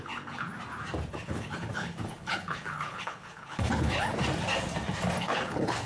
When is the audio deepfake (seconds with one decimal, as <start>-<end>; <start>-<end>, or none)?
0.0-0.5; 1.1-4.1; 5.2-5.9